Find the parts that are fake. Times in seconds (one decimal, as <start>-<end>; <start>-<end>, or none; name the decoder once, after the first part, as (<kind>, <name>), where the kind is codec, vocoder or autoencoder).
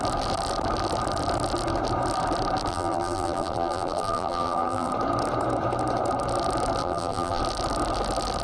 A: 2.7-4.9 (vocoder, BigVGAN v2); 6.8-7.4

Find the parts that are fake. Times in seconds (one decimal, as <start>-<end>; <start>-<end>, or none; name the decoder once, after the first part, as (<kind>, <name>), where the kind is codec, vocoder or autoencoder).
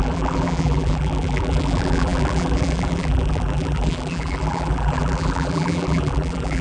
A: 0.0-6.6 (vocoder, BigVGAN v2)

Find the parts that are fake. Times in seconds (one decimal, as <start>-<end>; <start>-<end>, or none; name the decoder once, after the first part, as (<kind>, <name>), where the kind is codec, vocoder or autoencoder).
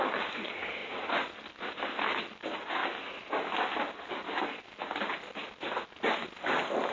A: 0.0-0.8 (vocoder, BigVGAN v2); 2.4-2.8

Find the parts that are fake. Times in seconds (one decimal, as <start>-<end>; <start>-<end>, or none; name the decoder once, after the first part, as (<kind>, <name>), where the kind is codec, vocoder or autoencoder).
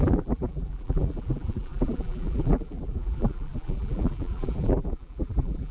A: 0.0-5.7 (vocoder, BigVGAN v2)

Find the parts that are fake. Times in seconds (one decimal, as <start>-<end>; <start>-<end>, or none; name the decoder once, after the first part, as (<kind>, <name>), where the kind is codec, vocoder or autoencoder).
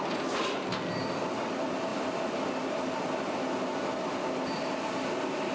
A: none